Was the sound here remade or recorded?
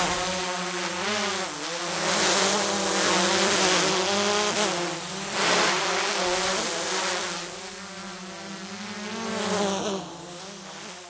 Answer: recorded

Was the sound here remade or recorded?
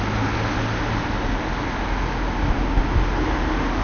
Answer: recorded